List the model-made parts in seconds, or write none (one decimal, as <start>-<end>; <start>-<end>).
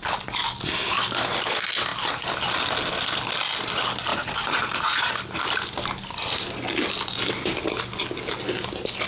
4.1-5.1